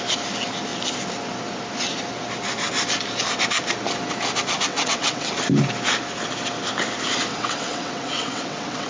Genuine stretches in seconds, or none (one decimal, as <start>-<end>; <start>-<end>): 0.0-4.7; 5.3-7.3